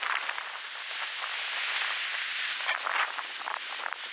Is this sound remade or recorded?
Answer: recorded